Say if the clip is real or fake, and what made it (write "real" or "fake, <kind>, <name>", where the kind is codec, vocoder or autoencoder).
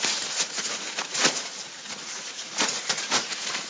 fake, vocoder, Vocos